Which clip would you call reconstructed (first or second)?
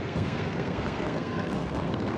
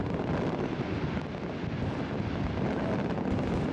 first